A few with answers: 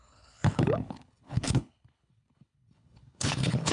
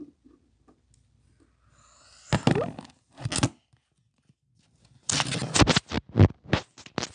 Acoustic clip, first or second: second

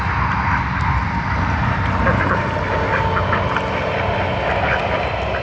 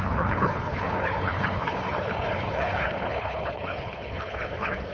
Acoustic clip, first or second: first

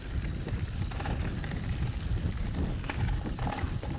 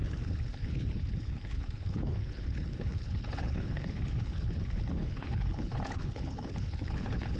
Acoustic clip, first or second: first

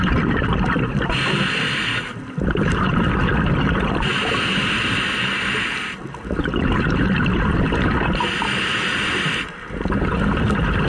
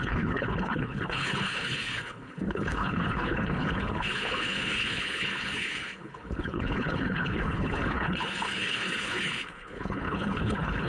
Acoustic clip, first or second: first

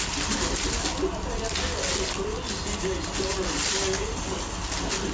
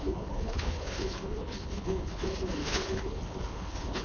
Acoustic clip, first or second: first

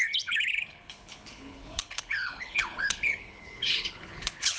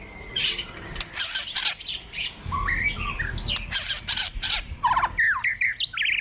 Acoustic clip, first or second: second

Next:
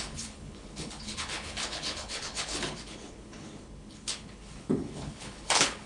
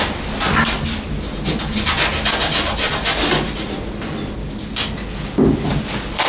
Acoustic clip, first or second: second